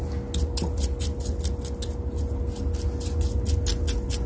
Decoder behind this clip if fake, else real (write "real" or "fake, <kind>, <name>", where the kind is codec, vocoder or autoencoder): real